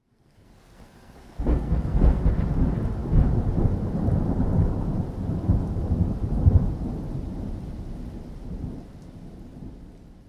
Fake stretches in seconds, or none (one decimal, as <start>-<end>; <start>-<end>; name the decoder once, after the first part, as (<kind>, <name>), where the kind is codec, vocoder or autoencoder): 0.0-2.2 (codec, SNAC)